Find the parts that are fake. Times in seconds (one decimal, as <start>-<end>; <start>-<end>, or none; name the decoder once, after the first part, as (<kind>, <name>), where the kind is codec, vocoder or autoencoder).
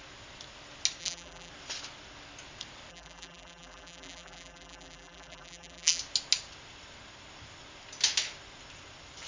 1.0-1.5 (vocoder, BigVGAN v2); 2.9-6.0